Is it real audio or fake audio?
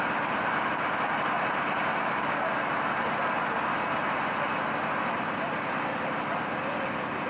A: real